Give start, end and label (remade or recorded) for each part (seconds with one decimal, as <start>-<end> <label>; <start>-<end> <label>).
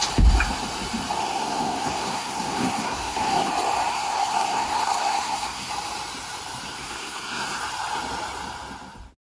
0.0-1.2 recorded; 1.2-3.5 remade; 3.5-3.9 recorded; 3.9-5.7 remade; 5.7-6.8 recorded; 6.8-7.6 remade; 7.6-9.2 recorded